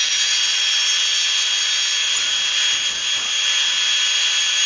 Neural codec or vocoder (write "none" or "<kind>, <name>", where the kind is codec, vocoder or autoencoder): none